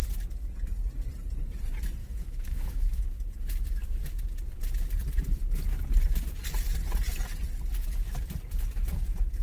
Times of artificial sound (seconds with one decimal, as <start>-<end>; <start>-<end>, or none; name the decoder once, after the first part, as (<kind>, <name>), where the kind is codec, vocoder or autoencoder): 2.0-3.0 (autoencoder, DAC-VAE)

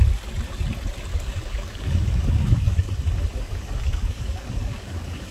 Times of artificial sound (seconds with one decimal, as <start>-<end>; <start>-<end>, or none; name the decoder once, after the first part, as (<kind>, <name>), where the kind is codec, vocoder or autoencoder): 1.1-2.9 (codec, DAC); 3.3-5.3

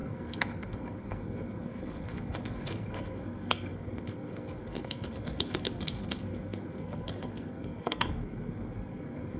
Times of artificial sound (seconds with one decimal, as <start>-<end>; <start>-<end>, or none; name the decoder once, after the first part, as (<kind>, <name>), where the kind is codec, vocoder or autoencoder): 0.0-9.4 (codec, SNAC)

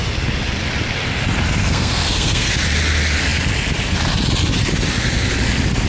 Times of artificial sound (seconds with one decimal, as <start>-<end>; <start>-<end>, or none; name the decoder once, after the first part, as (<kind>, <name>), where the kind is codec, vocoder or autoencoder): 1.6-2.5 (codec, SNAC)

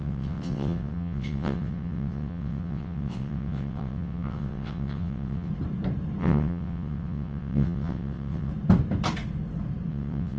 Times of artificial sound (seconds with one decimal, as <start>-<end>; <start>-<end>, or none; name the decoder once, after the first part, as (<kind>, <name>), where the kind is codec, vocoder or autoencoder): 0.0-5.5 (vocoder, WaveNeXt); 6.2-8.5; 9.9-10.4